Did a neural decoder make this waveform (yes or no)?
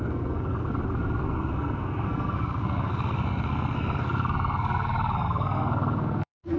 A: yes